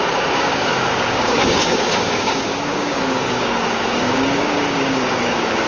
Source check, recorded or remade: remade